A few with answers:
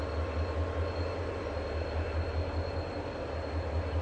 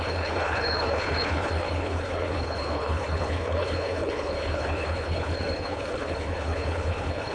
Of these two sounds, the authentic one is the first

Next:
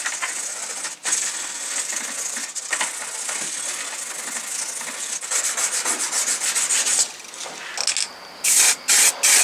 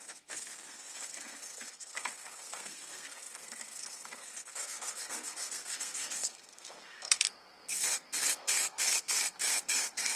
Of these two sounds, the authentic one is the first